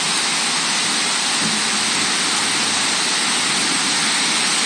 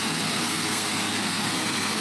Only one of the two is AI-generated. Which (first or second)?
second